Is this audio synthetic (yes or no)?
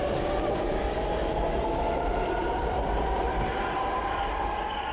yes